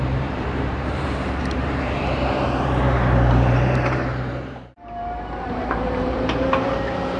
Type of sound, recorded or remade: remade